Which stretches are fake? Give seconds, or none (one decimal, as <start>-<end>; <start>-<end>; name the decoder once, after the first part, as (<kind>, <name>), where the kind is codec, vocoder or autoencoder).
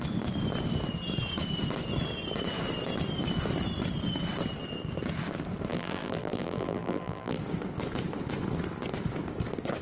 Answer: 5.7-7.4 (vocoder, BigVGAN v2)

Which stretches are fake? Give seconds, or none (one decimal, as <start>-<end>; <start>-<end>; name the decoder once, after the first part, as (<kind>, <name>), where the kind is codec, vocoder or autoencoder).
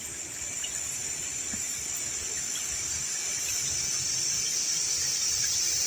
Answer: none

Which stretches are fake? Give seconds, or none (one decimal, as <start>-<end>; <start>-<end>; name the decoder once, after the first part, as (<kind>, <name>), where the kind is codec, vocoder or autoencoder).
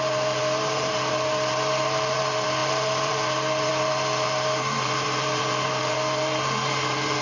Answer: 0.0-7.2 (vocoder, BigVGAN v2)